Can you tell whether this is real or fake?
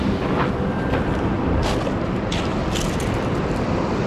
real